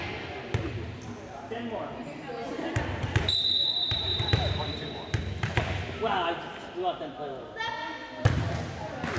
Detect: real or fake real